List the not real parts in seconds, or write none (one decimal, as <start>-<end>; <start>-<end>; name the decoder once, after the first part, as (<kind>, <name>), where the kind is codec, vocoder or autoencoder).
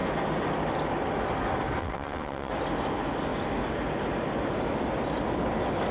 1.8-2.5 (vocoder, WaveNeXt)